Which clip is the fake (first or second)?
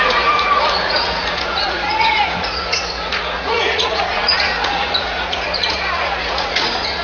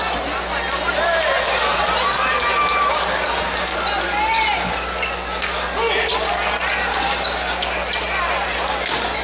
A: first